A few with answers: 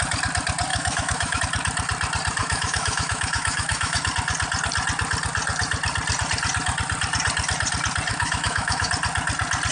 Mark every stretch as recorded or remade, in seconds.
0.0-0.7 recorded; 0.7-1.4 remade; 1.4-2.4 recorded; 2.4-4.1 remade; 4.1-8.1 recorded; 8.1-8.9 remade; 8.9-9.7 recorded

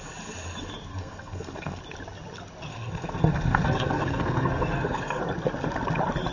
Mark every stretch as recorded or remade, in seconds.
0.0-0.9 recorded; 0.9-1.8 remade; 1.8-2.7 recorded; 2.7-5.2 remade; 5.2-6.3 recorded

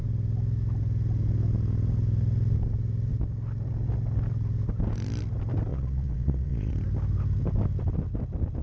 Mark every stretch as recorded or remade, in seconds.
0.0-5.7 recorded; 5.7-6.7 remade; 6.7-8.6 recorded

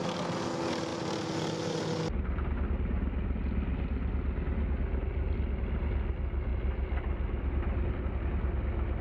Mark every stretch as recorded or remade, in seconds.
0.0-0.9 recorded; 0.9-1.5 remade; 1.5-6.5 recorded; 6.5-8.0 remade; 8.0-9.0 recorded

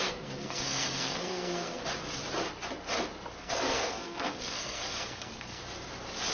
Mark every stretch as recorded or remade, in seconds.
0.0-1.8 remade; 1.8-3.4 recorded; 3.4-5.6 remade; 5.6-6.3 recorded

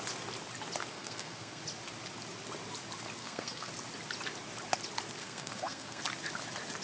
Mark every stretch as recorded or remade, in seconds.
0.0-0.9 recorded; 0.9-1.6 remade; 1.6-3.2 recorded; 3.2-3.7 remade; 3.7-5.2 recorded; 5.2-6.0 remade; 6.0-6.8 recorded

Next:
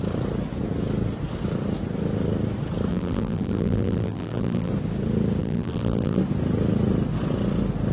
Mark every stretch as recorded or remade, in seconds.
0.0-2.9 recorded; 2.9-4.7 remade; 4.7-5.4 recorded; 5.4-6.2 remade; 6.2-7.9 recorded

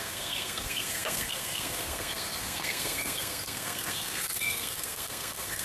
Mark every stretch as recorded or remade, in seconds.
0.0-5.6 remade